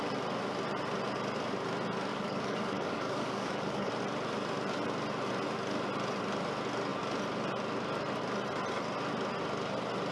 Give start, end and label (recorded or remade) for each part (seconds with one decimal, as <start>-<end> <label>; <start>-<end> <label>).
0.0-2.1 recorded; 2.1-3.9 remade; 3.9-10.1 recorded